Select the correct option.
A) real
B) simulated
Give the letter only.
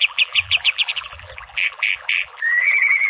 B